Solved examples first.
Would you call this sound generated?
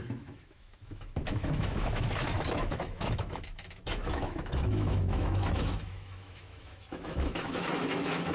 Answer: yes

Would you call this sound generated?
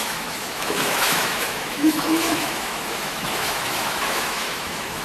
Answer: yes